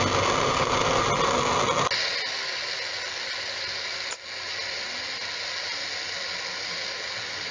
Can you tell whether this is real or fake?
real